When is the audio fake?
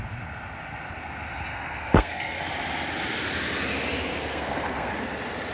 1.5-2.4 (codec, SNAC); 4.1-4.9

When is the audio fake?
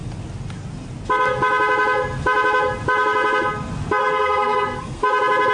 4.0-5.0 (codec, SNAC)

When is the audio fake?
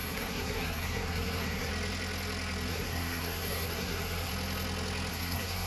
0.0-1.7 (codec, SNAC); 2.7-4.3; 5.1-5.7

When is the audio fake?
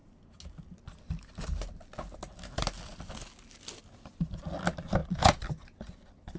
none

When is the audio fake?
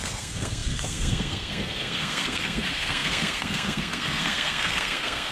0.0-5.3 (codec, SNAC)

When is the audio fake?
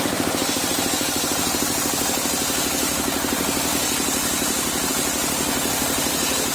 none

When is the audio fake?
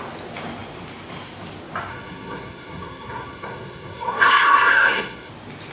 1.9-5.3 (codec, SNAC)